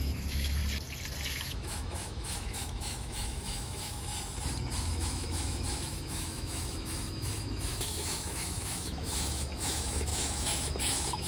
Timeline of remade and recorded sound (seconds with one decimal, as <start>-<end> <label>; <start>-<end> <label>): 0.0-0.6 remade; 0.6-1.3 recorded; 1.3-4.1 remade; 4.1-4.8 recorded; 4.8-11.3 remade